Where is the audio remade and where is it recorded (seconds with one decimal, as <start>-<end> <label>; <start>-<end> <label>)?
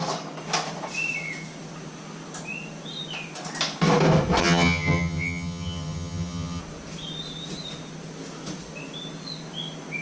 0.0-4.4 recorded; 4.4-6.6 remade; 6.6-10.0 recorded